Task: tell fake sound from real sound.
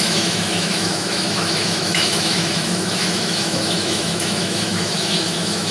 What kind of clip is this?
fake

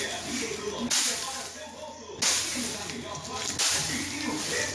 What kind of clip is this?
real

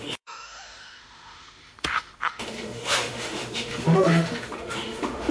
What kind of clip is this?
fake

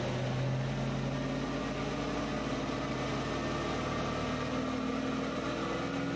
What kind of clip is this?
real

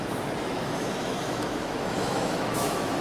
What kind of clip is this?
fake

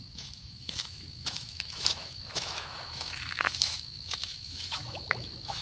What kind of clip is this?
fake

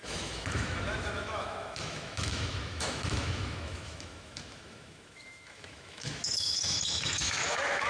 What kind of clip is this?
fake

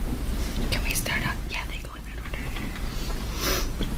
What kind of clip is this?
real